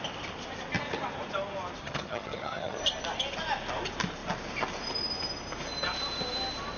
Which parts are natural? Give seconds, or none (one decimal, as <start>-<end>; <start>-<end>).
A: 0.0-1.8; 2.8-6.8